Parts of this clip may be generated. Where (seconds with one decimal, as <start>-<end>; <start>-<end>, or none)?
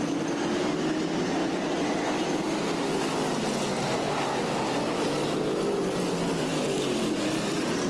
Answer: 1.4-1.9; 6.5-7.3